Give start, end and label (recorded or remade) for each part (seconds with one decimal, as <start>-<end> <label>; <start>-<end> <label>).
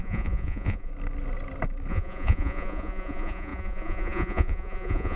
0.0-0.9 remade; 0.9-1.9 recorded; 1.9-5.2 remade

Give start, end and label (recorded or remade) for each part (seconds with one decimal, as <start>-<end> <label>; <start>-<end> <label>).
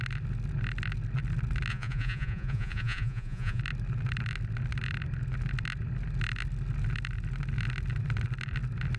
0.0-1.7 recorded; 1.7-3.6 remade; 3.6-9.0 recorded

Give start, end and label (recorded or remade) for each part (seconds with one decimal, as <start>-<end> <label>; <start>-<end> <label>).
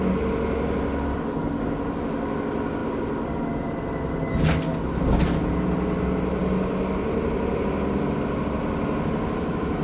0.0-9.8 recorded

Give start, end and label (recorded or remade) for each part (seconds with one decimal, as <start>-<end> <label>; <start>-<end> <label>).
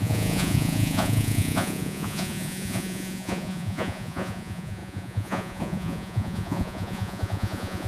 0.0-7.9 remade